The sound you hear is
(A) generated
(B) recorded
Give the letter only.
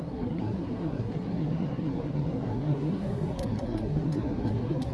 A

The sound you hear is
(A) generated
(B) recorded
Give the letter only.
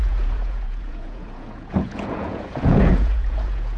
A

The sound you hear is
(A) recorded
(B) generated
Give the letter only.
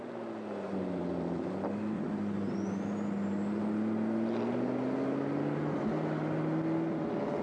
A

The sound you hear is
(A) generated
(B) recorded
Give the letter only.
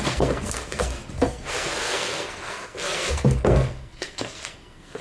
A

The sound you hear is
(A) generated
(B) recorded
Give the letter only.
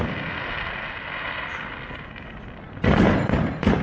B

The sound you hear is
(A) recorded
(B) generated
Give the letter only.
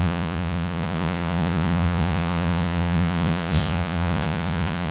B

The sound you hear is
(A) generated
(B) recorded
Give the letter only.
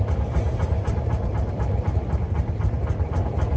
B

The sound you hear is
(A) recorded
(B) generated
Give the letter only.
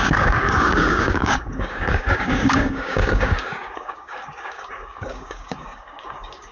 B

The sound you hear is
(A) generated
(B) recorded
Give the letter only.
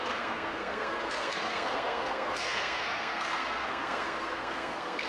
A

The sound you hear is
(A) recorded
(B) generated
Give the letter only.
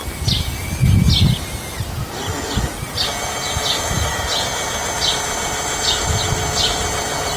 A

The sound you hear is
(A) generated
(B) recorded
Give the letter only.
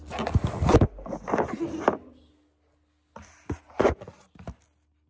B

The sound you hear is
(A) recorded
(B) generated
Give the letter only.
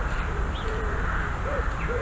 A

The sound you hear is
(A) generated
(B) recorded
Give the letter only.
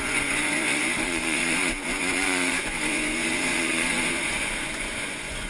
A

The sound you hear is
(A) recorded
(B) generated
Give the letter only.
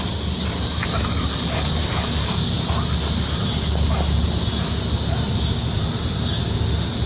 A